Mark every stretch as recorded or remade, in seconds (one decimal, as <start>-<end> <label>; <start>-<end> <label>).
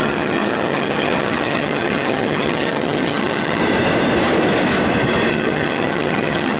0.0-3.6 remade; 3.6-5.3 recorded; 5.3-6.6 remade